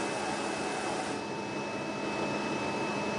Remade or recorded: recorded